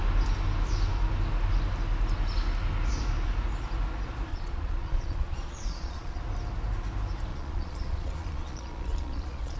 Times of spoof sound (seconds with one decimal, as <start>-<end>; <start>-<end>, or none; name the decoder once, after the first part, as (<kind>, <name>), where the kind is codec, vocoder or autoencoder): 4.3-6.2 (vocoder, Vocos); 7.3-9.6